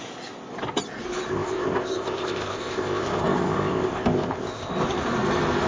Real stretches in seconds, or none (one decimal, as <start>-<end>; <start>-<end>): 0.0-1.3; 4.7-5.7